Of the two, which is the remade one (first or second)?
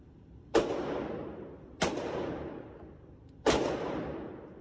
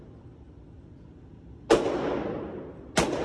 first